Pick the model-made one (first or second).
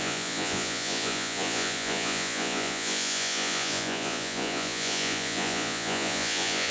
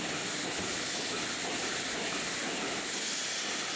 first